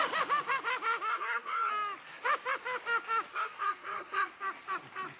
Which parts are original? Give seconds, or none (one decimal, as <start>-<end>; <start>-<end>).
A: 0.0-1.1; 1.7-3.3; 4.3-5.2